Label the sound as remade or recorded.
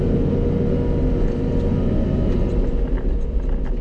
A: recorded